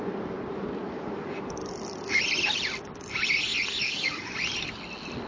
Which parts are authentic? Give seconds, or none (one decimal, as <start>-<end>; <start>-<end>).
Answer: 0.0-1.6; 2.2-3.8; 4.3-5.3